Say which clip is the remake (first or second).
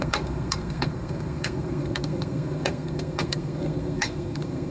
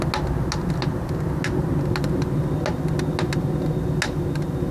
first